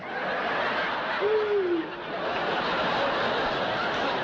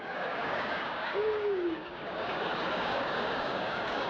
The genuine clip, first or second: first